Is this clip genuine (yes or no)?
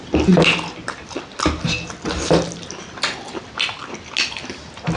yes